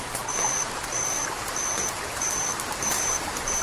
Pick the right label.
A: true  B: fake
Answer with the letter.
B